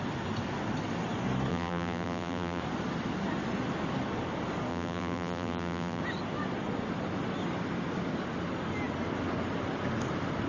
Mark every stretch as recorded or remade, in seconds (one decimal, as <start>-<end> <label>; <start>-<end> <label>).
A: 0.0-1.5 recorded; 1.5-2.6 remade; 2.6-4.7 recorded; 4.7-6.0 remade; 6.0-10.5 recorded